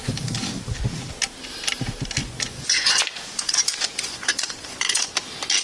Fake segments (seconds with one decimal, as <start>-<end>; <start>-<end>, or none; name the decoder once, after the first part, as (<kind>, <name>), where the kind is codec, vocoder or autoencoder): 2.2-5.1 (vocoder, Vocos)